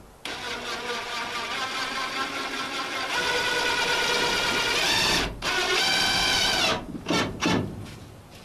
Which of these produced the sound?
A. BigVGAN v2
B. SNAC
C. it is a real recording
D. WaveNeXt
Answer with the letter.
C